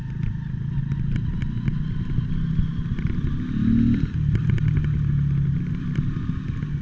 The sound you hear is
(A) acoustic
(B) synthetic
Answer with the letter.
A